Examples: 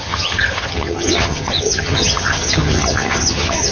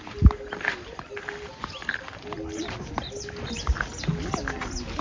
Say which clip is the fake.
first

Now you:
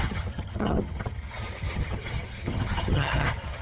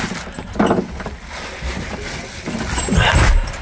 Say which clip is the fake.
first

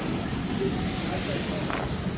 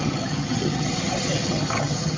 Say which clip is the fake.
second